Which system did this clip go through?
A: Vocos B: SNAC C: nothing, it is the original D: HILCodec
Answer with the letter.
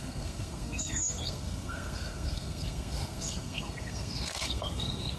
B